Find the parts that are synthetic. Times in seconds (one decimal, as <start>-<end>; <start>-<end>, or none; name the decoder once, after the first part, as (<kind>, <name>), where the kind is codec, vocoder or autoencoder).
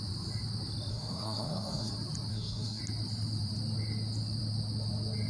0.9-1.9 (codec, SNAC); 2.3-2.8